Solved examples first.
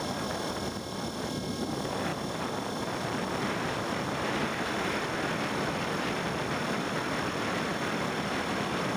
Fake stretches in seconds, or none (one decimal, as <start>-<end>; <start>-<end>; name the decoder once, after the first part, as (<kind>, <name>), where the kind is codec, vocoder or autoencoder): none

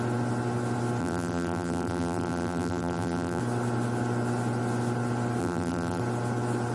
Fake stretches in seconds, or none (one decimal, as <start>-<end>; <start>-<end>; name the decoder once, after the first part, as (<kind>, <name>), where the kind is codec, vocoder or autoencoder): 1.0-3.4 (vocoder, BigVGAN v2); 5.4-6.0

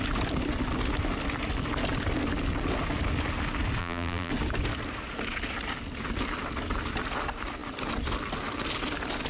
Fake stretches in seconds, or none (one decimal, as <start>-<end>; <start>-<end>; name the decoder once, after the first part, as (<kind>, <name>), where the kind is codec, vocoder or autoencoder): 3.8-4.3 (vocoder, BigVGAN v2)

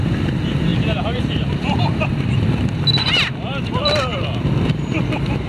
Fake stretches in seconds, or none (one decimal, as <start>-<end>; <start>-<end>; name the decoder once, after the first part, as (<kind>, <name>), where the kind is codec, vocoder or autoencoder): 0.0-4.1 (vocoder, BigVGAN v2); 4.7-5.5

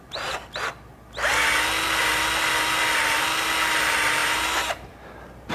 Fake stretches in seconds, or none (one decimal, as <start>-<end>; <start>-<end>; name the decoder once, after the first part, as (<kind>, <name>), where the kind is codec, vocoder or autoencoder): 4.2-5.5 (vocoder, BigVGAN v2)

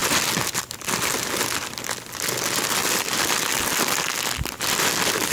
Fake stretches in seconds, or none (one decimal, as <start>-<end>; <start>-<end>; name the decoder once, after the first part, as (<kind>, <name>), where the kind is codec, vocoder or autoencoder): none

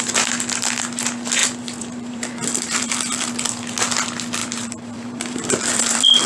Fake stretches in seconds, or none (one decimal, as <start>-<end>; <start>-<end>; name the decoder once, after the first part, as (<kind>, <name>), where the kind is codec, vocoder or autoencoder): 1.4-3.3 (vocoder, BigVGAN v2); 4.4-6.3